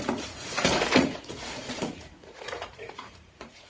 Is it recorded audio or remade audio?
remade